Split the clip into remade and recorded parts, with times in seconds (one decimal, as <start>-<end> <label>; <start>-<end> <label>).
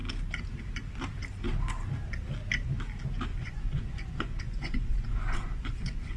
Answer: 0.0-3.3 recorded; 3.3-6.2 remade